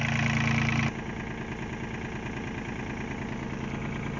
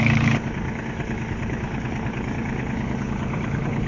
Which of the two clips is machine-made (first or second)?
second